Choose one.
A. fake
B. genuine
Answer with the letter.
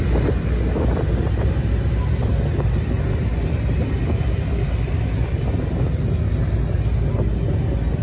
B